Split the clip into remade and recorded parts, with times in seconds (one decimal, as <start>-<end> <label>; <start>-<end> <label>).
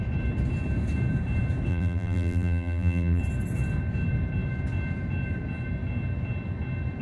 0.0-1.7 recorded; 1.7-3.2 remade; 3.2-7.0 recorded